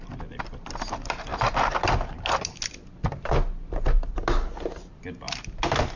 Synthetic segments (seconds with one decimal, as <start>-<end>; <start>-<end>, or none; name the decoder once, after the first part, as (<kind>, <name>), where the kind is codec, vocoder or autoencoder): none